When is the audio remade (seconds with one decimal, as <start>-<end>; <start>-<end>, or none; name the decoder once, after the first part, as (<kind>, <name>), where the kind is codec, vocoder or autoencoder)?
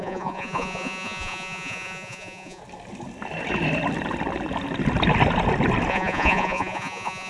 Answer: 0.0-2.6 (vocoder, Vocos); 5.9-7.3